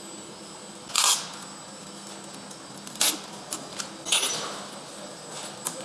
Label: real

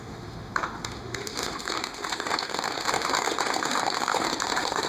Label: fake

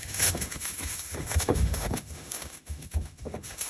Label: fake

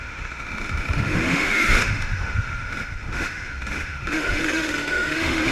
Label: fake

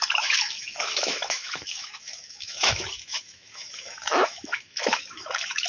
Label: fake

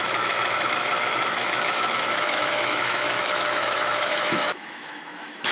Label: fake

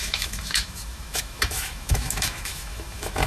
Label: fake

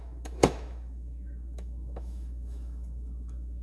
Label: fake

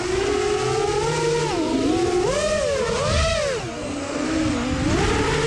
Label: real